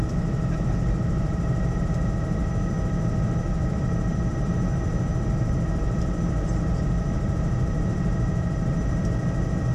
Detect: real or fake fake